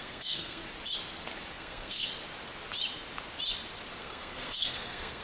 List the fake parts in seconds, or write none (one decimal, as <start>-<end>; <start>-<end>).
0.0-0.6; 1.6-2.1; 4.0-5.2